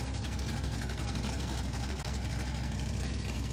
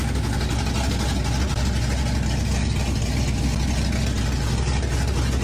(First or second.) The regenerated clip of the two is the first